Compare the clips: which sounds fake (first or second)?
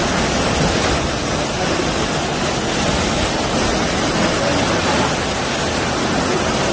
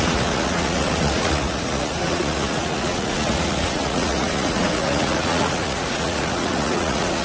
second